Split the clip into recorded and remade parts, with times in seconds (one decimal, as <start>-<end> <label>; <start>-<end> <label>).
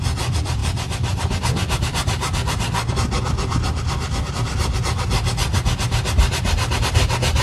0.0-5.5 remade; 5.5-6.8 recorded; 6.8-7.4 remade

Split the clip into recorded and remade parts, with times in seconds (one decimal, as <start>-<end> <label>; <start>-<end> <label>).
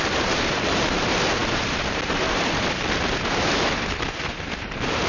0.0-5.1 remade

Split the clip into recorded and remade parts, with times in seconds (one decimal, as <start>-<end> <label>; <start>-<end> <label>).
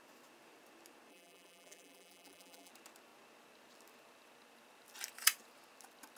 0.0-1.1 recorded; 1.1-2.7 remade; 2.7-6.2 recorded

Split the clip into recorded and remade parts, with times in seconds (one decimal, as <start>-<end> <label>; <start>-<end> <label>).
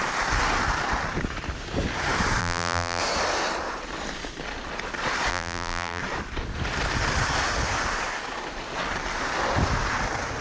0.0-2.4 recorded; 2.4-3.0 remade; 3.0-5.3 recorded; 5.3-6.0 remade; 6.0-10.4 recorded